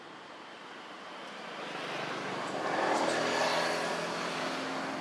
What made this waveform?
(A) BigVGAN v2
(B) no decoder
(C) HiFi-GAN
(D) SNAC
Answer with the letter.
B